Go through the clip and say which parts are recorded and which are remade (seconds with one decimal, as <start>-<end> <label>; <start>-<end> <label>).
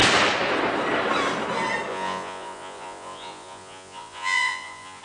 0.0-1.9 recorded; 1.9-5.0 remade